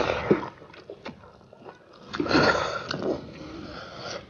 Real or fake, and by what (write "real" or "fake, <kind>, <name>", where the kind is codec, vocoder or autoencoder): real